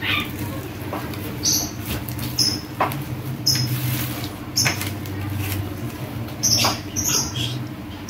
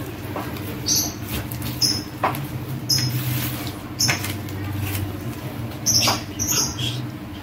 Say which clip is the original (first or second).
second